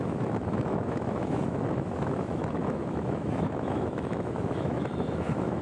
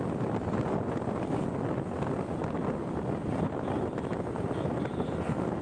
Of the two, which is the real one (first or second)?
second